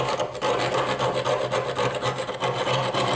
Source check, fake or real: real